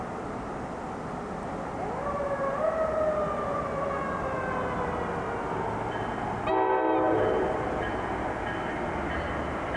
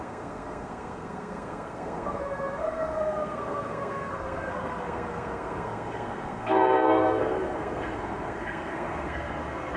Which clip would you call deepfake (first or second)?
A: second